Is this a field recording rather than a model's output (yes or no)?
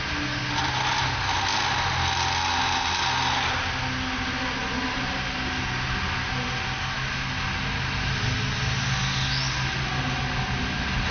yes